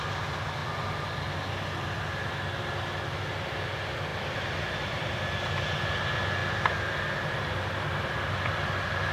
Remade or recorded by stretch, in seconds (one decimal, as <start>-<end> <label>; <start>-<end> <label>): 0.0-9.1 recorded